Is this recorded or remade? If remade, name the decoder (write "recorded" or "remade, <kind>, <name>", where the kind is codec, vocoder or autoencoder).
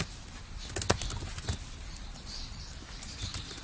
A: recorded